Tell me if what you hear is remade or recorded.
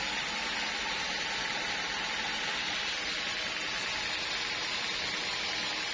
recorded